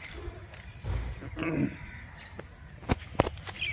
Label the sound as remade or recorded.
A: recorded